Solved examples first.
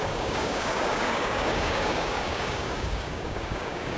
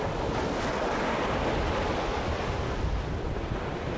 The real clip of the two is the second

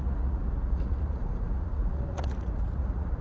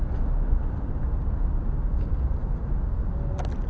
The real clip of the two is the second